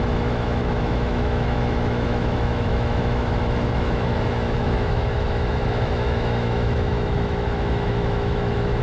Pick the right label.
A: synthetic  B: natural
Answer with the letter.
A